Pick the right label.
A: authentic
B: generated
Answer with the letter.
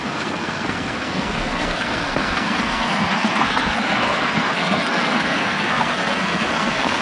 B